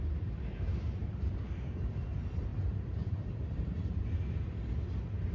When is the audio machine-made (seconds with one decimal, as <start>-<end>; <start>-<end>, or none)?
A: 1.0-1.5; 2.5-4.0